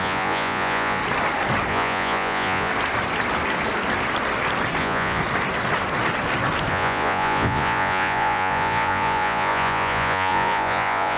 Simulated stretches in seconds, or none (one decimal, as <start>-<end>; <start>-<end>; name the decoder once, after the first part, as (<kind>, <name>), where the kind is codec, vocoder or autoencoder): 0.0-1.0 (vocoder, Vocos); 1.7-2.7; 4.8-5.2; 6.7-11.2

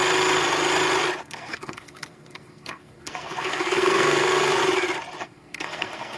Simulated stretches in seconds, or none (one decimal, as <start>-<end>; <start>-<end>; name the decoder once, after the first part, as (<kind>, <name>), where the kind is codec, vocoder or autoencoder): 1.2-4.6 (codec, SNAC); 5.2-6.2

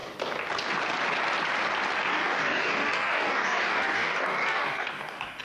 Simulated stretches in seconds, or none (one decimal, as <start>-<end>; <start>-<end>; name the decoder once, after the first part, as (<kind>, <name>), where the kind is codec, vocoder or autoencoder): 2.1-5.4 (codec, DAC)

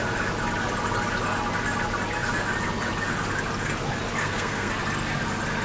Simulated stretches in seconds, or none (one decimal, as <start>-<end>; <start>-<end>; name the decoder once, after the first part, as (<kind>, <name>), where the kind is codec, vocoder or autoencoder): 4.2-4.7 (codec, SNAC)

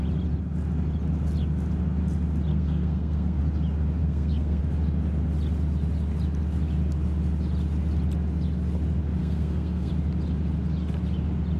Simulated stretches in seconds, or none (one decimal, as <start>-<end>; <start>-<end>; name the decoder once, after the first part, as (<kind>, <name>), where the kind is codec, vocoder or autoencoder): 2.5-3.4 (codec, SNAC); 4.0-4.6; 9.2-9.9